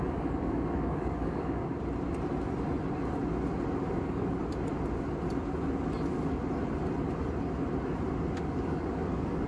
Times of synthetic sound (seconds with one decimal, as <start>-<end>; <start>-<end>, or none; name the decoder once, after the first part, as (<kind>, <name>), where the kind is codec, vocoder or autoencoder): 0.0-1.7 (codec, DAC); 4.0-4.4; 8.4-9.5